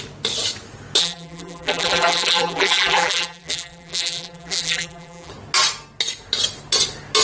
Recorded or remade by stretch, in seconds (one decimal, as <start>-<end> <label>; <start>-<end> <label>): 0.0-1.0 recorded; 1.0-5.3 remade; 5.3-7.2 recorded